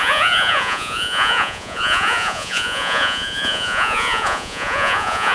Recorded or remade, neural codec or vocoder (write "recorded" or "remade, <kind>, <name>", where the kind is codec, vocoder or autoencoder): remade, vocoder, Vocos